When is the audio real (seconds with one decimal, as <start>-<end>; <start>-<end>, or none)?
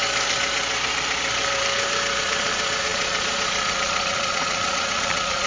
0.0-2.2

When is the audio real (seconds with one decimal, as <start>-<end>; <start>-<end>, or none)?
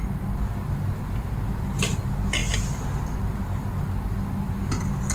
0.0-5.1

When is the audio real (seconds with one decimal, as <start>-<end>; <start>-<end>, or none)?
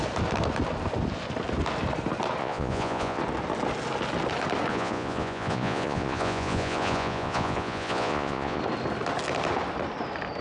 0.0-2.4; 3.2-4.7; 8.6-10.4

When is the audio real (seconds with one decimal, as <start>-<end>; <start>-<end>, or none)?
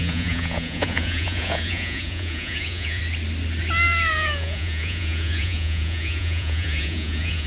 3.0-4.1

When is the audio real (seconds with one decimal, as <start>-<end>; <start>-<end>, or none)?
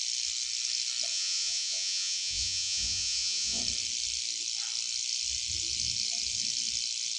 0.0-1.1; 3.6-7.2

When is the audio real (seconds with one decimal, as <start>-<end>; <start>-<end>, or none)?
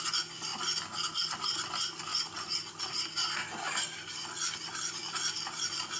0.0-6.0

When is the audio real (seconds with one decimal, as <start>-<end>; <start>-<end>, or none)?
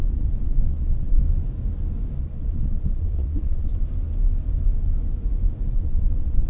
1.2-2.2; 3.7-5.7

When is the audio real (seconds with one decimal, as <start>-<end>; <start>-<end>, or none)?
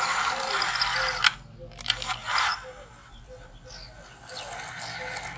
0.0-5.4